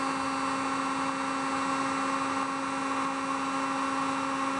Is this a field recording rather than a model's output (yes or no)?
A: yes